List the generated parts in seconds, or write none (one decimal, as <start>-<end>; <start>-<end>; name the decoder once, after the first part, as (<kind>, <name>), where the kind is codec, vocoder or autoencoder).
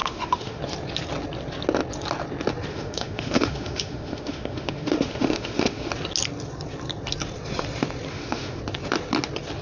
0.0-0.6 (autoencoder, DAC-VAE); 2.7-5.9; 8.1-8.6